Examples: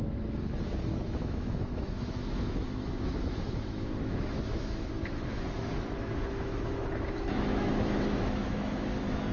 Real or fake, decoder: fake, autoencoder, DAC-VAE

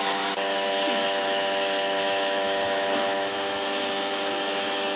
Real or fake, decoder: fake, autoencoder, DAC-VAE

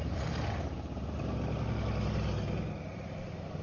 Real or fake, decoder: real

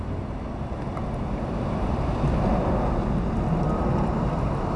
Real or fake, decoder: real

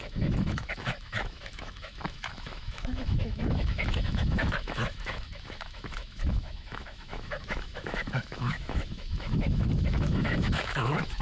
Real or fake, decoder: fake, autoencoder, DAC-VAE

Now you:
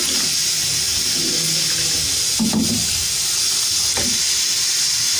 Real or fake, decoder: real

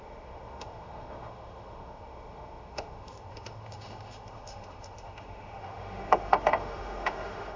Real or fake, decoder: fake, autoencoder, DAC-VAE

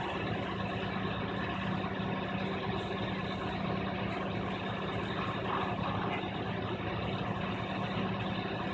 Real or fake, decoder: real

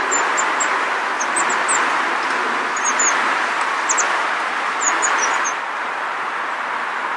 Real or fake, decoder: real